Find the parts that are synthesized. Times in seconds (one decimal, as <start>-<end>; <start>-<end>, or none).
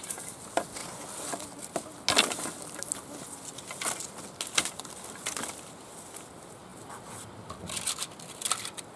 none